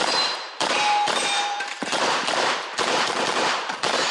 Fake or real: fake